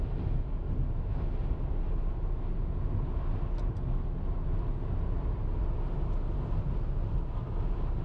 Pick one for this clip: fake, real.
real